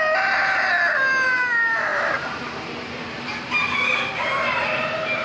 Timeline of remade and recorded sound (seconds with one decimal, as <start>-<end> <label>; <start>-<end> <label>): 0.0-1.9 recorded; 1.9-5.2 remade